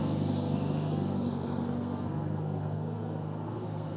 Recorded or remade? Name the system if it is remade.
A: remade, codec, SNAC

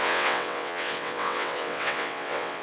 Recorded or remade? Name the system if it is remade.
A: remade, vocoder, WaveNeXt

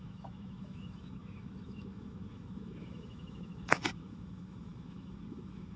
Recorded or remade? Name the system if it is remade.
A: remade, autoencoder, DAC-VAE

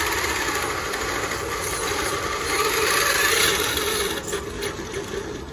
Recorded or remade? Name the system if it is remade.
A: recorded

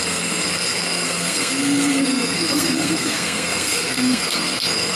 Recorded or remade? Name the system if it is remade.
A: remade, codec, SNAC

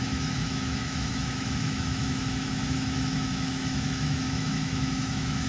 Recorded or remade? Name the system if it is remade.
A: remade, autoencoder, DAC-VAE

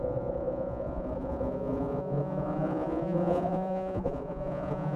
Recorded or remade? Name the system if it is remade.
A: remade, vocoder, Vocos